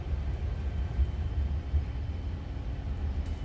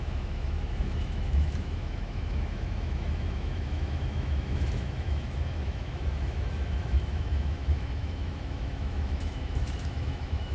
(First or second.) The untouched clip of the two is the first